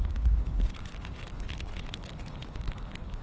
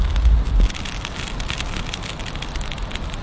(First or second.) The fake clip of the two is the first